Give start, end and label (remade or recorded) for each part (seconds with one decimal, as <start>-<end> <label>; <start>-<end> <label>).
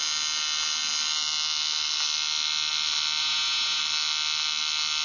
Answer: 0.0-3.2 recorded; 3.2-3.8 remade; 3.8-5.0 recorded